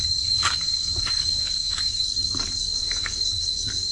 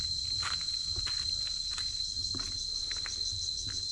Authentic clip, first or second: second